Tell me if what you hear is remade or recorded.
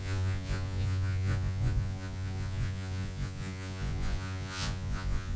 remade